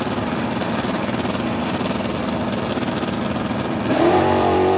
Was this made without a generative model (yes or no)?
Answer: no